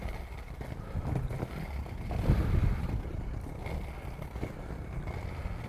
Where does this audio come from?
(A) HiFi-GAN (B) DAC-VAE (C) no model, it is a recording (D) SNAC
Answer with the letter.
C